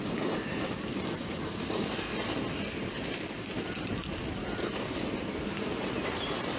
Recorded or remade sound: recorded